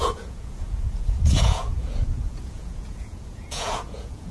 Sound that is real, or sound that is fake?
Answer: fake